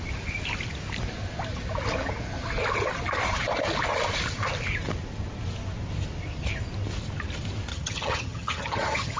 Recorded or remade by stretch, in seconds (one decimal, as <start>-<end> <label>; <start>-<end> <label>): 0.0-7.7 recorded; 7.7-9.2 remade